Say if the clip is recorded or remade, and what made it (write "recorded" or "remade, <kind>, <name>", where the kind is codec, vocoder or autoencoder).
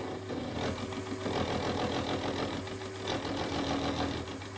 recorded